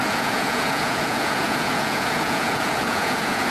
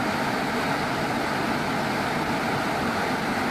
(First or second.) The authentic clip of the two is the second